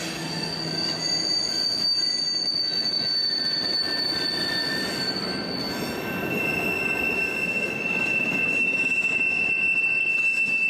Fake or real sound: real